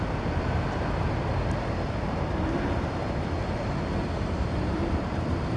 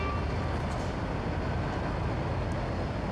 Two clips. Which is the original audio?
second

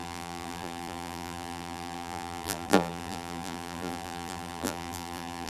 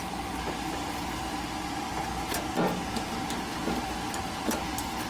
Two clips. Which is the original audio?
second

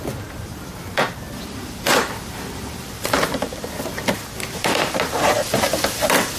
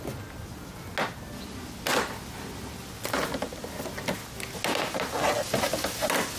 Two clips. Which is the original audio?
second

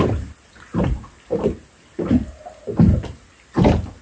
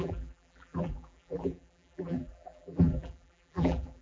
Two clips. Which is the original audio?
first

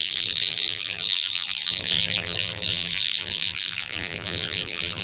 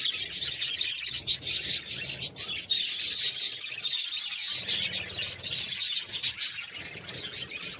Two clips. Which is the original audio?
second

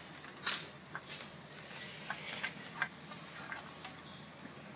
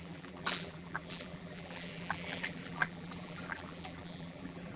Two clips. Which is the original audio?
first